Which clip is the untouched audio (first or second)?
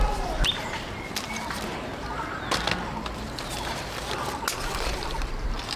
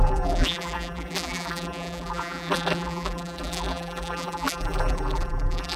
first